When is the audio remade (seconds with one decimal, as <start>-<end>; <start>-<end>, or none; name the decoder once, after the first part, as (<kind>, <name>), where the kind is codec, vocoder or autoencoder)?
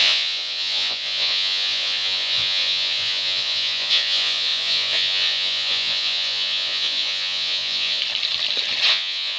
0.0-8.0 (vocoder, Vocos); 8.9-9.4